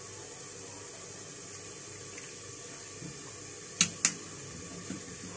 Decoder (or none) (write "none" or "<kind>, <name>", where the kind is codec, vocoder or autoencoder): none